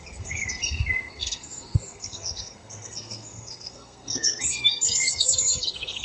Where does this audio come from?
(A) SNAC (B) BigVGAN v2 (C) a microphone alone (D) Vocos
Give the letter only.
A